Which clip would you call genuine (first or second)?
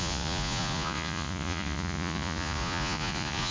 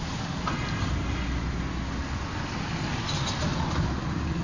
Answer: second